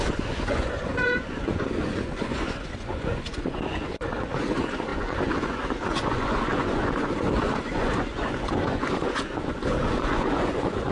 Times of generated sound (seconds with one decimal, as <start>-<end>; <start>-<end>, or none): 0.0-10.9